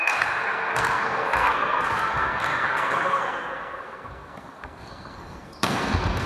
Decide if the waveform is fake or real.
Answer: fake